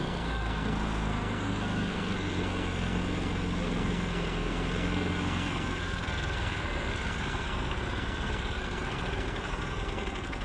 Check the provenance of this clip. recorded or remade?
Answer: remade